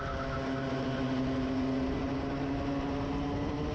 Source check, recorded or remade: recorded